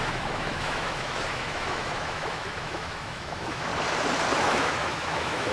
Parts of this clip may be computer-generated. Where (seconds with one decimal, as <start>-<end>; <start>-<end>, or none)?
0.0-3.7; 4.4-5.5